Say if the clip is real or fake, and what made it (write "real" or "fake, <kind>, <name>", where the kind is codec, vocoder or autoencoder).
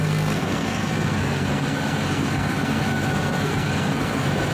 fake, codec, SNAC